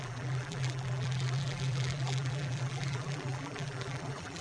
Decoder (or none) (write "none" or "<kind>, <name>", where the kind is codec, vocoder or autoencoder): vocoder, BigVGAN v2